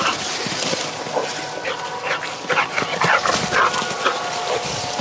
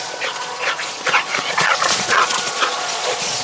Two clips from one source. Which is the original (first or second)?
first